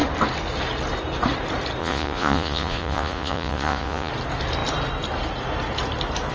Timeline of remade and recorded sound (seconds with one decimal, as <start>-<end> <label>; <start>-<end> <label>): 0.0-1.8 recorded; 1.8-4.1 remade; 4.1-6.3 recorded